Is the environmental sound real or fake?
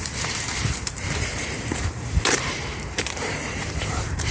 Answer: fake